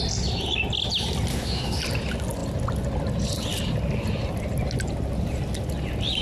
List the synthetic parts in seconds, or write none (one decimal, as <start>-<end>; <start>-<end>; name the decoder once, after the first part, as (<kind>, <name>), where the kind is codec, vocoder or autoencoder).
1.3-1.8 (autoencoder, DAC-VAE)